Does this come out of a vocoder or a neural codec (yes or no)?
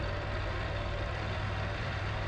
yes